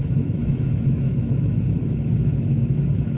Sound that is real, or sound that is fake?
fake